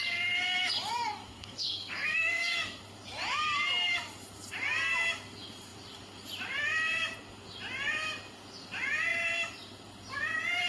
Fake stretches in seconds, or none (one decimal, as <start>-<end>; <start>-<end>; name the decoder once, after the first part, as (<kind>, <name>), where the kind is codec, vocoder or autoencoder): 1.3-2.8 (codec, SNAC)